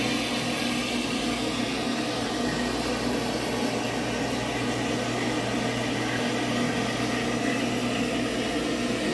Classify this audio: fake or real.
real